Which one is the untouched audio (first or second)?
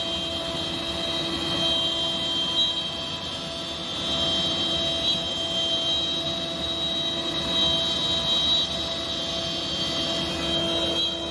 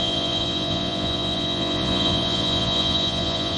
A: first